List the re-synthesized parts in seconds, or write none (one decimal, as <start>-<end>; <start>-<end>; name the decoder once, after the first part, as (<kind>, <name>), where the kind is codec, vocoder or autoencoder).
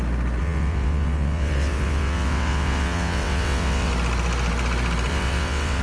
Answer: 0.4-3.9 (vocoder, WaveNeXt); 5.1-5.8